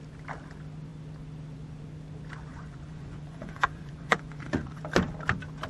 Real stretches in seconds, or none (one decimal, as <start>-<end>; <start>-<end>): 0.0-2.5; 4.8-5.7